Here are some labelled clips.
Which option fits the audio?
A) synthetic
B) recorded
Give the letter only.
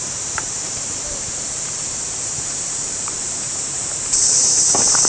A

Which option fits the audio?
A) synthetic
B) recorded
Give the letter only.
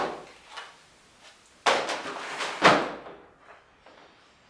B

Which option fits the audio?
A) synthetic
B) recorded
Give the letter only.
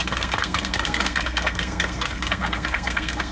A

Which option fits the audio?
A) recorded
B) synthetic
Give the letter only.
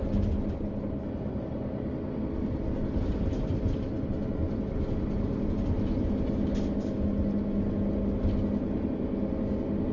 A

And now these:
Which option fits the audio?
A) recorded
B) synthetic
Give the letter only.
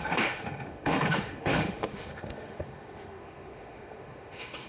B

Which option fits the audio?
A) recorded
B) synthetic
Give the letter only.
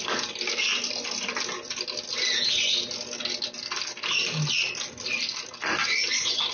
A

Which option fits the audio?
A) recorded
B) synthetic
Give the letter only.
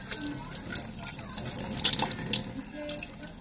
A